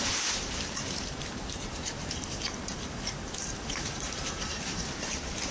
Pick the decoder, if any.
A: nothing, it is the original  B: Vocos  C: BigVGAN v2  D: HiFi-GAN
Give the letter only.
C